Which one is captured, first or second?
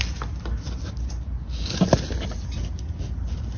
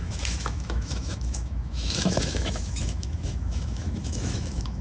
first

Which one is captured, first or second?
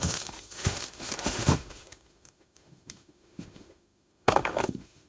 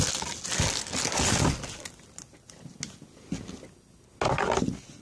second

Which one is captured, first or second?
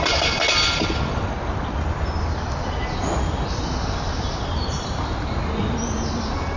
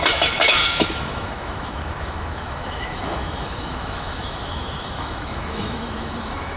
first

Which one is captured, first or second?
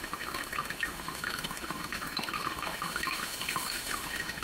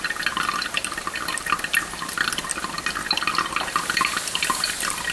second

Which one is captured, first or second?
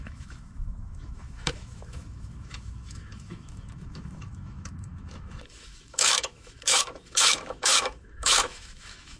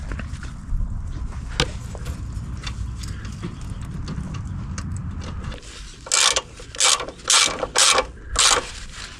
second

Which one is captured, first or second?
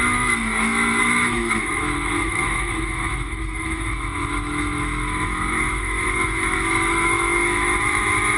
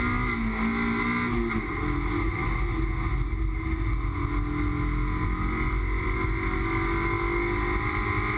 second